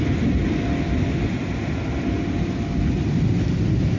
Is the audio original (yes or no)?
yes